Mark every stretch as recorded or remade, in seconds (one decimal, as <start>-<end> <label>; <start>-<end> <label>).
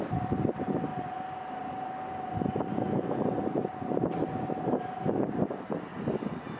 0.0-6.6 recorded